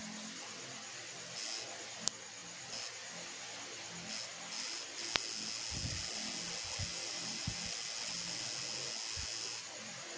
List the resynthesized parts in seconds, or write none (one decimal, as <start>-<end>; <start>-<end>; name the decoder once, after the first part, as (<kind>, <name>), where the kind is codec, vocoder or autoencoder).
6.9-7.6 (vocoder, BigVGAN v2)